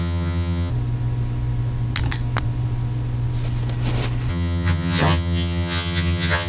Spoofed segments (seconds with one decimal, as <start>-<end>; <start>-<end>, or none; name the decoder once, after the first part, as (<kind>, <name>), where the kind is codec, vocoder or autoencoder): 0.0-0.7 (vocoder, HiFi-GAN); 4.3-6.5